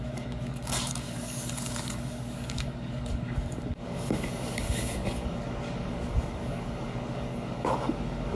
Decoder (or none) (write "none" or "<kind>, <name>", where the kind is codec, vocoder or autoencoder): codec, DAC